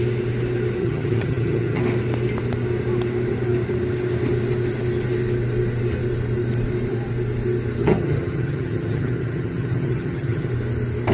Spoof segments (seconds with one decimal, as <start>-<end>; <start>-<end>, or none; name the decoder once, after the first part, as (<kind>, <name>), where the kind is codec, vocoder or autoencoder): 0.8-1.8 (vocoder, HiFi-GAN); 7.8-10.5

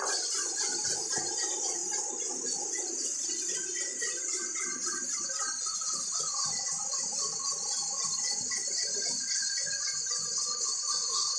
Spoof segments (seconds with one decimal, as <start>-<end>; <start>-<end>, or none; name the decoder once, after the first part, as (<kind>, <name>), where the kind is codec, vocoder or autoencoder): 0.0-1.8 (vocoder, BigVGAN v2); 3.2-11.4

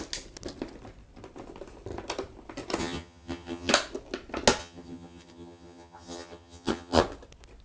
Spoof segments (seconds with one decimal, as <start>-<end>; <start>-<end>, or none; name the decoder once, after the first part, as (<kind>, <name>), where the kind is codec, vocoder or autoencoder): 2.8-3.7 (vocoder, HiFi-GAN); 4.6-7.0

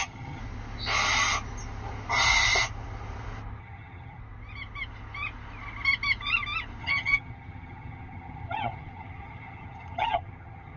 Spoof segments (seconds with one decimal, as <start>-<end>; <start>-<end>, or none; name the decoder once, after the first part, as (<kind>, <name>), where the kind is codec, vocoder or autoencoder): 0.0-0.4 (vocoder, HiFi-GAN); 3.6-4.2; 6.8-10.8

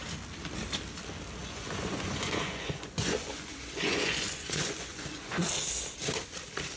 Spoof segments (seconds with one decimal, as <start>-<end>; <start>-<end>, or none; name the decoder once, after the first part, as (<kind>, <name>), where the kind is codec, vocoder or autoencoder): 1.4-5.5 (vocoder, Vocos)

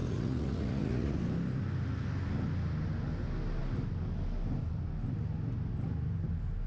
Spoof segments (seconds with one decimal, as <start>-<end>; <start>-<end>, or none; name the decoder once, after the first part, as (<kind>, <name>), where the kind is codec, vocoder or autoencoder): 0.0-1.2 (vocoder, Vocos)

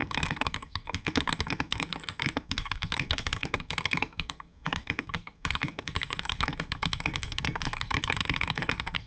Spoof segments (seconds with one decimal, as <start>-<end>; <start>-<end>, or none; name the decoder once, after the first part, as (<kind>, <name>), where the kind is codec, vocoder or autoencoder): 0.0-9.1 (codec, SNAC)

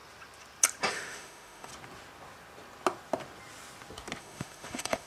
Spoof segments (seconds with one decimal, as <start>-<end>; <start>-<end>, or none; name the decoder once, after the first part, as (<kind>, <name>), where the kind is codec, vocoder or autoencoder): 0.9-1.7 (autoencoder, DAC-VAE); 4.2-5.1